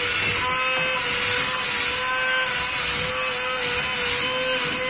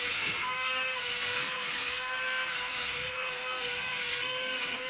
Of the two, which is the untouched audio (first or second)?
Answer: first